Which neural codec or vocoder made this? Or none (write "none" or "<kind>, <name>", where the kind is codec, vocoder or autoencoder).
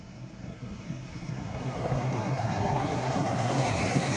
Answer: codec, SNAC